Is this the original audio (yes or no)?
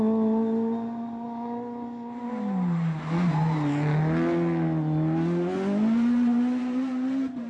yes